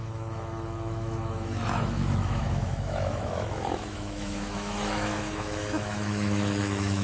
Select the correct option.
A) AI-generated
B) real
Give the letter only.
A